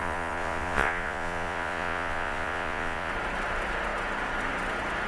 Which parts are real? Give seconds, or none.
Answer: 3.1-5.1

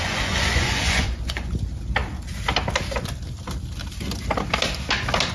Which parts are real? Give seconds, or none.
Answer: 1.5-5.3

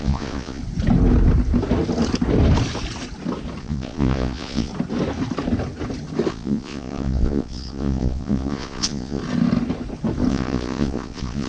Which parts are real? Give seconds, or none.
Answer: 0.6-3.6; 4.7-6.3; 9.2-10.3

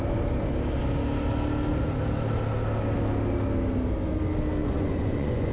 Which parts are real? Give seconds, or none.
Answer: 0.0-4.6

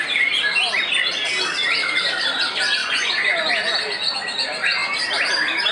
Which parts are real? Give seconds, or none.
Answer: 0.0-2.8; 3.5-5.7